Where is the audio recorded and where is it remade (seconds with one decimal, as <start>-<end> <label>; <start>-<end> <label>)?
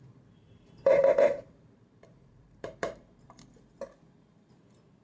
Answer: 0.0-0.4 recorded; 0.4-3.4 remade; 3.4-5.0 recorded